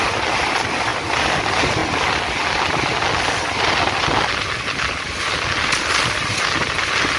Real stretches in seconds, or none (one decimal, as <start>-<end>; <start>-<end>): 0.0-7.2